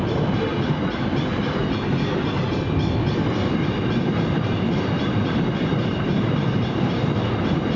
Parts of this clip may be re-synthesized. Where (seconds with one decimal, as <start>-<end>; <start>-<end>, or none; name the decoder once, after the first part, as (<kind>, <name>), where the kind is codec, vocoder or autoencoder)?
3.4-7.1 (vocoder, BigVGAN v2)